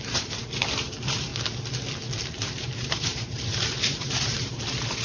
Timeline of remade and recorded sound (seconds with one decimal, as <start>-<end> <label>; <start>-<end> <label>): 0.0-1.3 remade; 1.3-2.2 recorded; 2.2-5.0 remade